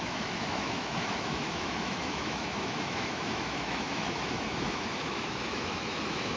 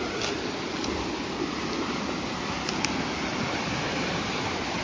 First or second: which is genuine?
second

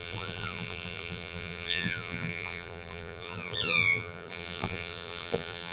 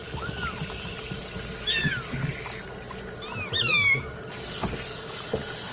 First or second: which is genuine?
second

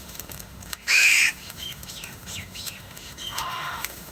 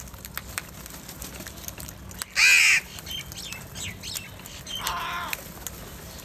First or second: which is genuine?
second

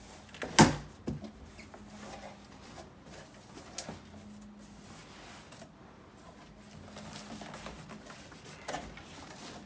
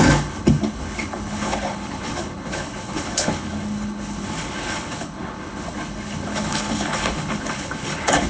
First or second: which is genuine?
first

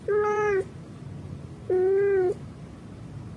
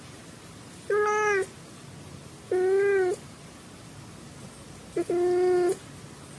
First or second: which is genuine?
second